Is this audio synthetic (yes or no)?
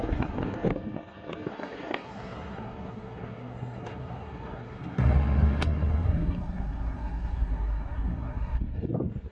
yes